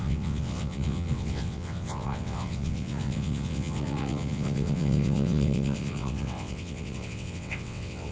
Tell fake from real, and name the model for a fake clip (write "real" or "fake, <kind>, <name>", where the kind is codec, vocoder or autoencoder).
fake, vocoder, WaveNeXt